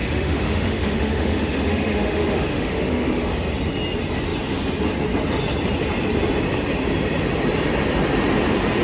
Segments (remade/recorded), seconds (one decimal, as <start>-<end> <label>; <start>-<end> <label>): 0.0-3.3 remade; 3.3-8.8 recorded